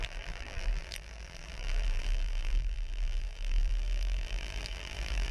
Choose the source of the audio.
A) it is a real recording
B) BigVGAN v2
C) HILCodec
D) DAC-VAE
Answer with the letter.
B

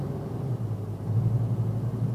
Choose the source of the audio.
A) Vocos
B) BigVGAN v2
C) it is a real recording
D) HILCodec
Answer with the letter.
C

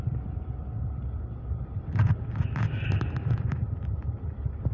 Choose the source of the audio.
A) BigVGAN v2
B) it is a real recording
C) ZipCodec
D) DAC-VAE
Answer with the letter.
B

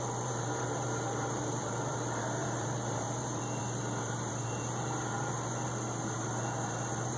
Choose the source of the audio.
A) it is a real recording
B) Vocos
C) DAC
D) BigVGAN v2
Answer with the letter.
D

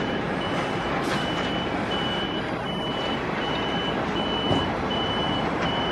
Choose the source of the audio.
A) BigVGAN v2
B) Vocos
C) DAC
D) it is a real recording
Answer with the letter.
A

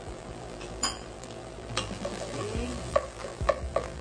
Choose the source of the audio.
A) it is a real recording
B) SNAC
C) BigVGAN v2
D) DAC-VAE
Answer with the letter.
C